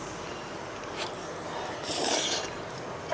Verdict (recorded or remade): recorded